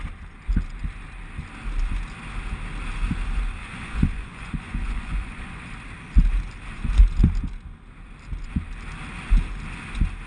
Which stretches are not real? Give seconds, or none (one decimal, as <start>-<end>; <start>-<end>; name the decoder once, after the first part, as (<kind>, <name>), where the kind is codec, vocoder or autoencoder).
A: 3.6-5.7 (vocoder, Vocos)